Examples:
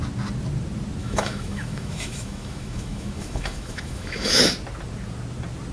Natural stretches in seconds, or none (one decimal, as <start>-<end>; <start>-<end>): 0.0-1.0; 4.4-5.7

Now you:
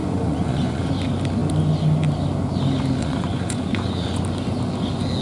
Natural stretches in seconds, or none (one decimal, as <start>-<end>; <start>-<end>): 0.9-3.0; 4.2-5.2

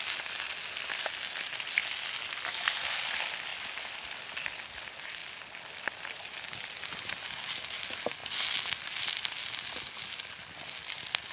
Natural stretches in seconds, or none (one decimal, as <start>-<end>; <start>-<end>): 0.0-3.5; 4.2-5.2; 6.5-11.3